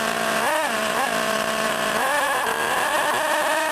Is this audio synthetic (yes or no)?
yes